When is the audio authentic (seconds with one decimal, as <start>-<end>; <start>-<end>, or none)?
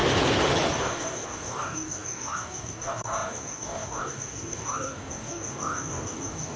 0.0-0.8